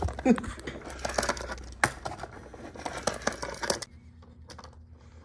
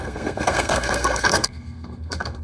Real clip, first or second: first